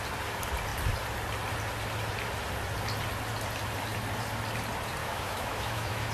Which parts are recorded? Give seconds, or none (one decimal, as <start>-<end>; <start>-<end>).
0.0-5.0